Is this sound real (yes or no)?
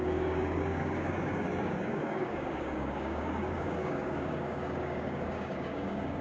no